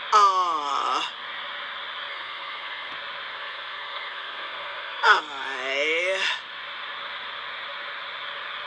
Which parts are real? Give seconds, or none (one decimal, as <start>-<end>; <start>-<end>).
0.0-2.1; 2.9-3.3; 5.2-8.7